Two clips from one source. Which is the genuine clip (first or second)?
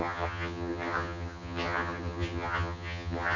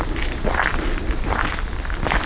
second